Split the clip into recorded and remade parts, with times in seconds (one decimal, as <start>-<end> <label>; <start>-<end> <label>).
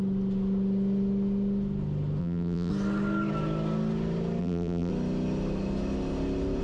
0.0-2.2 recorded; 2.2-2.7 remade; 2.7-4.4 recorded; 4.4-4.9 remade; 4.9-6.6 recorded